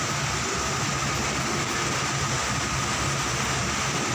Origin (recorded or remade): recorded